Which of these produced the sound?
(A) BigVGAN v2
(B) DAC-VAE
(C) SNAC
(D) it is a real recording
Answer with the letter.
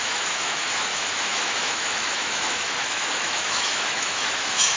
B